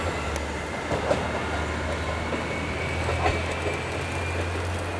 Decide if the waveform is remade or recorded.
recorded